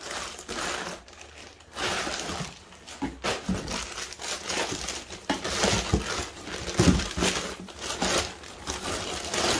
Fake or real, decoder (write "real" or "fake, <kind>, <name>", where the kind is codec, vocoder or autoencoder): real